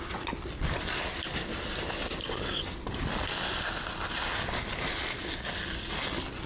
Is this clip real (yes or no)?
yes